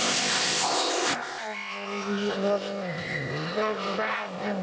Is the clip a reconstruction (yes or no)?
yes